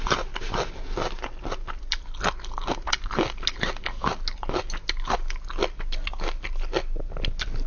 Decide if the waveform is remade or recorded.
recorded